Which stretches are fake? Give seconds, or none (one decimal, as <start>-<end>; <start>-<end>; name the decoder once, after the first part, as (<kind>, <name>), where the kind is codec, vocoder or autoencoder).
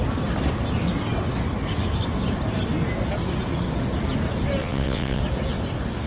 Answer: 4.6-5.2 (vocoder, WaveNeXt)